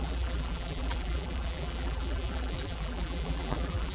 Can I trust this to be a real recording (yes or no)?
no